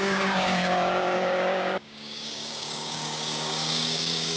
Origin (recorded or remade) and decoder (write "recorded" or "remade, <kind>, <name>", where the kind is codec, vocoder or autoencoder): remade, codec, DAC